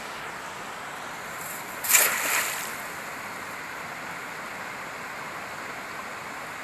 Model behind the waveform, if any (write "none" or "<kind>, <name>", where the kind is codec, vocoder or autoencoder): none